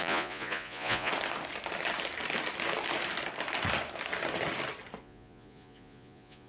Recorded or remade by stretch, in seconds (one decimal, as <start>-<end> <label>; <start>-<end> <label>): 0.0-1.1 remade; 1.1-5.0 recorded; 5.0-6.5 remade